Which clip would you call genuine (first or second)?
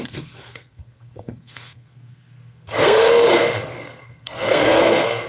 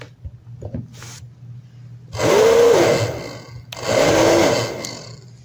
second